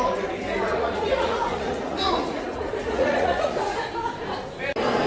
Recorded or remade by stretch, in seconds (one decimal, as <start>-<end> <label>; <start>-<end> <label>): 0.0-0.7 recorded; 0.7-3.8 remade; 3.8-5.1 recorded